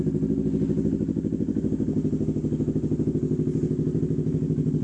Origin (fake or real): real